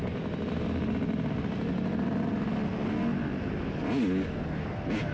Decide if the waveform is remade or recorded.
recorded